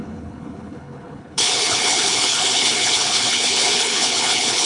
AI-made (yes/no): yes